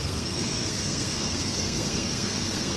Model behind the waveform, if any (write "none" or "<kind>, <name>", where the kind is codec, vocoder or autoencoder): codec, SNAC